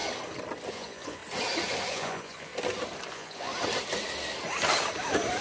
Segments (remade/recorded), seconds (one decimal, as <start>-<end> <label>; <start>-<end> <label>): 0.0-0.7 recorded; 0.7-1.2 remade; 1.2-1.9 recorded; 1.9-2.5 remade; 2.5-3.1 recorded; 3.1-3.5 remade; 3.5-5.4 recorded